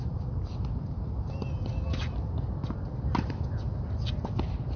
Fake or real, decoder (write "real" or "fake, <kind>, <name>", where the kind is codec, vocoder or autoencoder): real